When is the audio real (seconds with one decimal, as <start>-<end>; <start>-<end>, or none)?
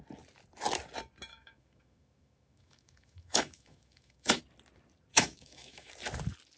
0.0-1.3; 4.4-5.1; 5.9-6.6